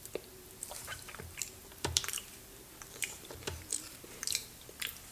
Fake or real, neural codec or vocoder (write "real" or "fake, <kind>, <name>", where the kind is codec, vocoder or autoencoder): fake, vocoder, BigVGAN v2